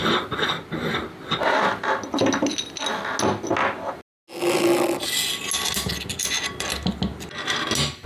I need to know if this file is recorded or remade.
recorded